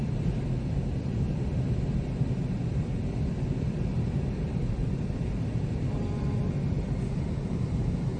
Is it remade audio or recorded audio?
recorded